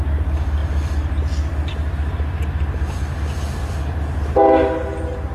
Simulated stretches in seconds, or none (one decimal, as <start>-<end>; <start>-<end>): none